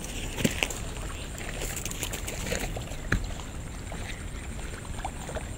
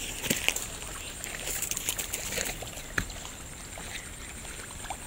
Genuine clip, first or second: first